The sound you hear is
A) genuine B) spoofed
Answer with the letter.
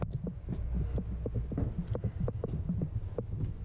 A